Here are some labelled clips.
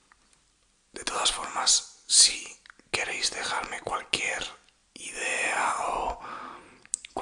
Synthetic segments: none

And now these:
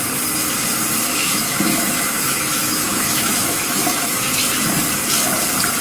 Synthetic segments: 1.2-4.3 (autoencoder, DAC-VAE)